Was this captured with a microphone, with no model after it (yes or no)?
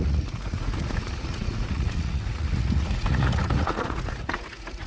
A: no